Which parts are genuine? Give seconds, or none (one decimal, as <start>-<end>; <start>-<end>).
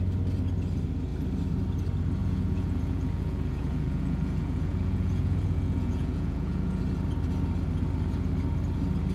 0.0-2.2; 6.8-9.1